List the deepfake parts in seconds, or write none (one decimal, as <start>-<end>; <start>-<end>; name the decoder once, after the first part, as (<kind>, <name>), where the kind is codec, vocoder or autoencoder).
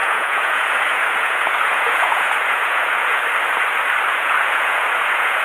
0.0-3.2 (vocoder, Vocos); 4.1-5.4